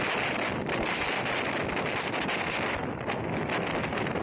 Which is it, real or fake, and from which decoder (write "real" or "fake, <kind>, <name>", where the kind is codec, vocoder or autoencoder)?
real